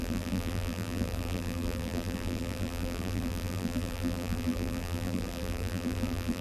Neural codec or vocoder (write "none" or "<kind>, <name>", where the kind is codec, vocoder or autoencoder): vocoder, BigVGAN v2